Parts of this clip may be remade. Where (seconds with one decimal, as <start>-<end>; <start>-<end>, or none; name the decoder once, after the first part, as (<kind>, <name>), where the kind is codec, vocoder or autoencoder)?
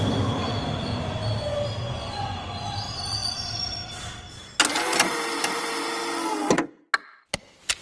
1.8-2.6 (vocoder, Vocos)